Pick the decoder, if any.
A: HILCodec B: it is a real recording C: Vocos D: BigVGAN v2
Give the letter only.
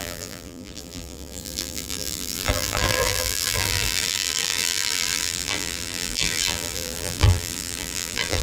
D